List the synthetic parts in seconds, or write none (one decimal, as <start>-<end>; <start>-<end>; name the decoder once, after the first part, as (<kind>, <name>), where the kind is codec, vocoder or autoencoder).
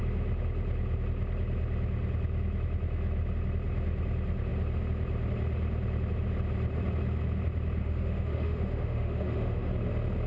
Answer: 7.8-9.7 (autoencoder, DAC-VAE)